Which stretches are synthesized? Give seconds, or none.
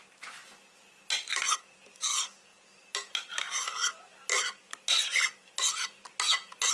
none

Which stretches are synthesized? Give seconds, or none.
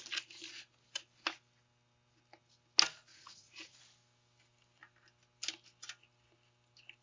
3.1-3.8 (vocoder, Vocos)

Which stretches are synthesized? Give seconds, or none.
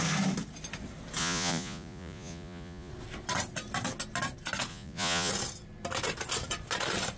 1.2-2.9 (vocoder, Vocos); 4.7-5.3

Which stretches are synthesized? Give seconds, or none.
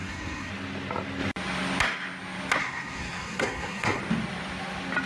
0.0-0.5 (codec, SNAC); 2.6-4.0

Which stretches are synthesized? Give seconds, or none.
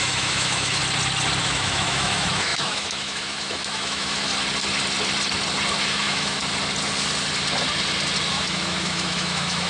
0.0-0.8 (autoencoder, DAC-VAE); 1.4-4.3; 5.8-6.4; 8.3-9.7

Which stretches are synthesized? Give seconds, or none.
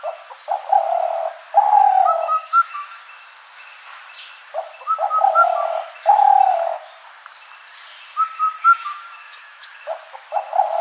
1.8-3.0 (autoencoder, DAC-VAE); 8.6-10.0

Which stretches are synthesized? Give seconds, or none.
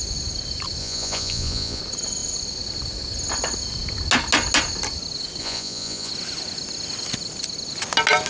0.8-1.8 (vocoder, Vocos); 5.4-6.1